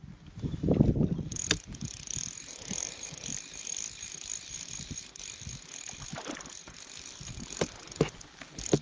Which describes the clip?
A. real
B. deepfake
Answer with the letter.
A